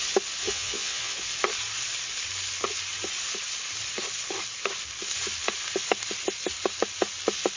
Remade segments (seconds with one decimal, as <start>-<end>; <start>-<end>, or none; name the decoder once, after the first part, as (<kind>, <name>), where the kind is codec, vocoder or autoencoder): 0.4-1.2 (vocoder, Vocos)